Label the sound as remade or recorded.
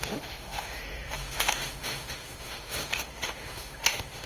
remade